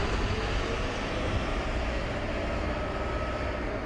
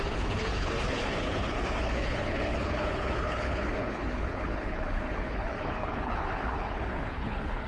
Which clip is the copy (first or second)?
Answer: second